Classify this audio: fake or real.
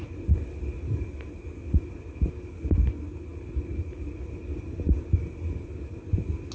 real